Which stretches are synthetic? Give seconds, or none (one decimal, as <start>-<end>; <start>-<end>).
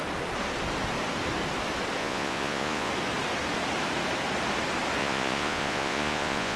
2.0-2.9; 5.0-6.6